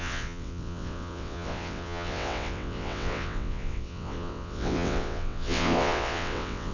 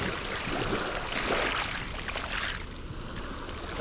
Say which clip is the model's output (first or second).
first